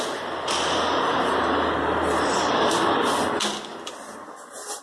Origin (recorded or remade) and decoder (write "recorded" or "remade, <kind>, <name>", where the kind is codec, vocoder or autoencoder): recorded